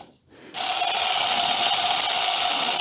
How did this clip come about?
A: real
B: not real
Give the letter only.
A